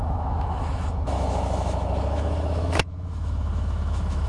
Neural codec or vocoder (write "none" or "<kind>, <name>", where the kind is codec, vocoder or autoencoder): autoencoder, DAC-VAE